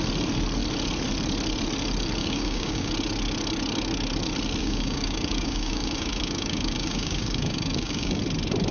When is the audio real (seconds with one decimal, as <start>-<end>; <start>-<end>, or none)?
0.0-2.2; 2.9-4.6; 8.2-8.7